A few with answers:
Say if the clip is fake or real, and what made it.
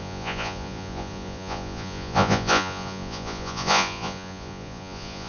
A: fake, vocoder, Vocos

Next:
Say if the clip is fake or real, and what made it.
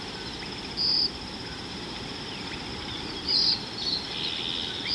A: real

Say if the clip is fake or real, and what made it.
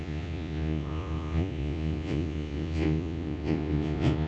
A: fake, vocoder, Vocos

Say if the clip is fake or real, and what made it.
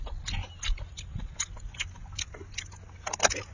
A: real